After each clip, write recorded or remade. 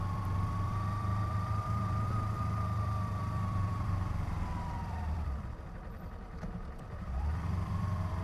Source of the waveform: remade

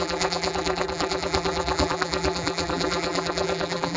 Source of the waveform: remade